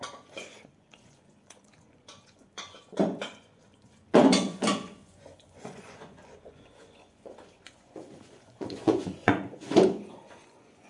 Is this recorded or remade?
remade